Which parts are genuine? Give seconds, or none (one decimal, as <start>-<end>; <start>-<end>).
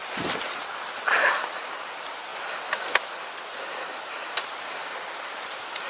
0.0-5.9